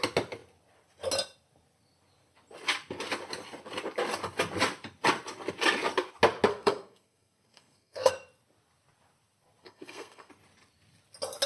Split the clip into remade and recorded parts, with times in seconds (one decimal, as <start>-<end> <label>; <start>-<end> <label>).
0.0-6.5 recorded; 6.5-8.1 remade; 8.1-9.6 recorded; 9.6-10.3 remade; 10.3-11.5 recorded